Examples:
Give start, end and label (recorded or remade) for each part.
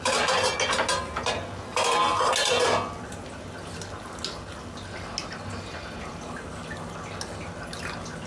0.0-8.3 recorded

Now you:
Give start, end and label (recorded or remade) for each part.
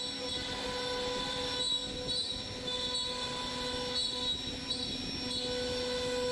0.0-6.3 recorded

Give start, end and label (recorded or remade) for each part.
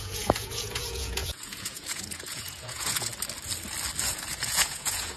0.0-3.1 remade; 3.1-4.0 recorded; 4.0-5.2 remade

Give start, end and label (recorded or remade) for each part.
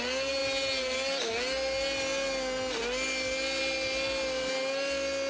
0.0-5.3 recorded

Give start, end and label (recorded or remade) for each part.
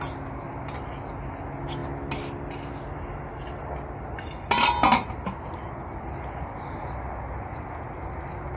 0.0-8.6 recorded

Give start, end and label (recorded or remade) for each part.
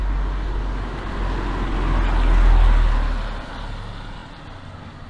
0.0-5.1 recorded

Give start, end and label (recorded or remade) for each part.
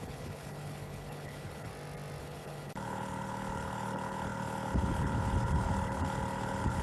0.0-1.7 remade; 1.7-2.2 recorded; 2.2-6.8 remade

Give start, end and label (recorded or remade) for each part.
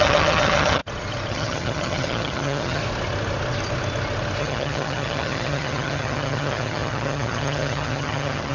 0.0-0.8 remade; 0.8-1.3 recorded; 1.3-2.8 remade; 2.8-4.4 recorded; 4.4-8.5 remade